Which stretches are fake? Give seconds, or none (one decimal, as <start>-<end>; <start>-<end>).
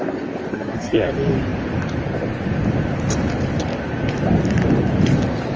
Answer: 0.5-1.1